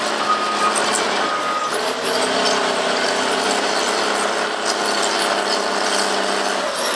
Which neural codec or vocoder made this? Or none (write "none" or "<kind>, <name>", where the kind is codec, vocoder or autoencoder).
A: none